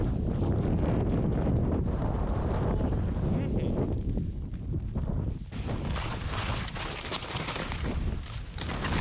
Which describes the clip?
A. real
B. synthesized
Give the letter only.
A